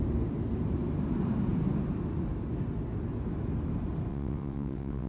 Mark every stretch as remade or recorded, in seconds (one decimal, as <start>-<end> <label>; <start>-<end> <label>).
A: 0.0-4.1 recorded; 4.1-5.1 remade